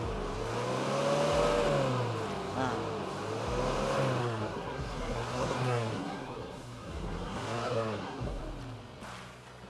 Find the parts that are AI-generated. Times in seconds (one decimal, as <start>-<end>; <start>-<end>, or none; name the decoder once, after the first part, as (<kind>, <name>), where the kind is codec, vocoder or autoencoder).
4.2-8.4 (codec, SNAC)